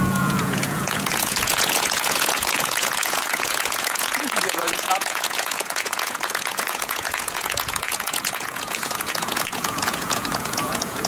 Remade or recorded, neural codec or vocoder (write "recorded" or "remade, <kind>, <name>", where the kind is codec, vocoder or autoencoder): remade, vocoder, Vocos